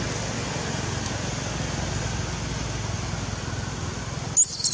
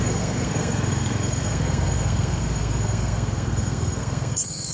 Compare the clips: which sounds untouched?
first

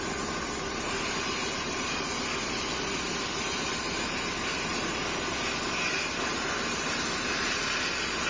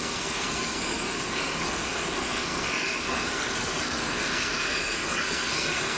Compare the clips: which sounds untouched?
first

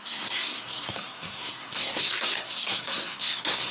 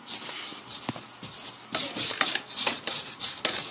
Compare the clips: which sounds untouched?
second